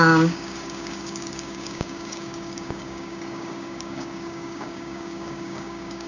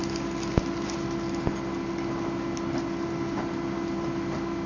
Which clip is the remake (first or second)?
first